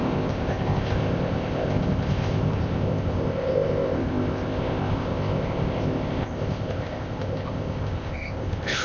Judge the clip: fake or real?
fake